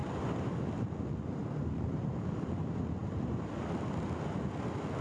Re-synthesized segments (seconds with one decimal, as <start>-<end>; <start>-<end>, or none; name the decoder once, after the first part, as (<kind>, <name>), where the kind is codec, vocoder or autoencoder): none